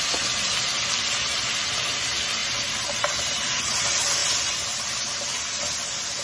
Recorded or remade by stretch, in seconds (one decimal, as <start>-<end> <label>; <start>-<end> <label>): 0.0-2.4 recorded; 2.4-3.6 remade; 3.6-4.2 recorded; 4.2-5.4 remade; 5.4-6.2 recorded

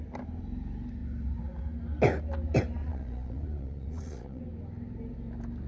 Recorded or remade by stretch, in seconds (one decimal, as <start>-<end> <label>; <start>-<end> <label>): 0.0-2.8 recorded; 2.8-4.4 remade; 4.4-5.7 recorded

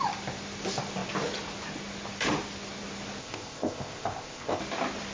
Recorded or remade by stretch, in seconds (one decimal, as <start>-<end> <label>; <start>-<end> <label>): 0.0-3.2 recorded; 3.2-4.6 remade; 4.6-5.1 recorded

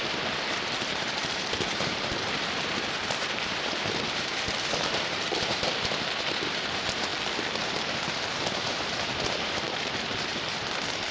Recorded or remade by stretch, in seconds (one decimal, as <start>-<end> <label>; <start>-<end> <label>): 0.0-7.1 remade; 7.1-7.6 recorded; 7.6-11.1 remade

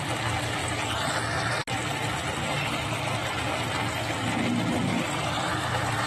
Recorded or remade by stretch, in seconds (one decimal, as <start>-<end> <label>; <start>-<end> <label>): 0.0-4.9 recorded; 4.9-6.1 remade

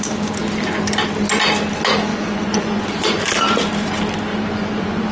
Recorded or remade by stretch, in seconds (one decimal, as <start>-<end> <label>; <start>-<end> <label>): 0.0-2.1 recorded; 2.1-3.2 remade; 3.2-4.3 recorded; 4.3-5.1 remade

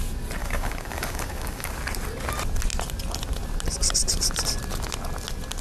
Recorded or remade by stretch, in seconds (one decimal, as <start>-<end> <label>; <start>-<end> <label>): 0.0-0.4 recorded; 0.4-1.8 remade; 1.8-5.6 recorded